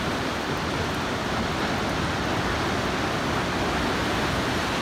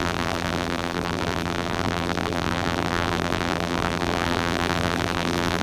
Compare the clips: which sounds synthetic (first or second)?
second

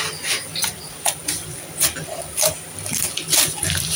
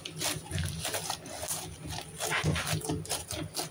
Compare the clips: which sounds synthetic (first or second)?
first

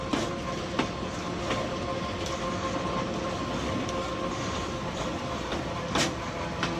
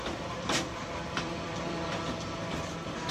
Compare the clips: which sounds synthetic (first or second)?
second